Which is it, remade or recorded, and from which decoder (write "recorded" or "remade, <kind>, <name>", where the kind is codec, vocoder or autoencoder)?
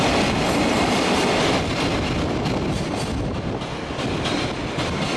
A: remade, vocoder, BigVGAN v2